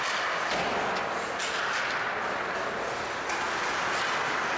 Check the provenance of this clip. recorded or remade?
recorded